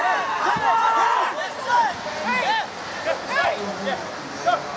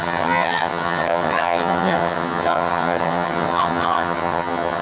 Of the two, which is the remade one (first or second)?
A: second